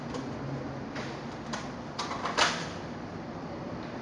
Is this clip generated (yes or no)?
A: yes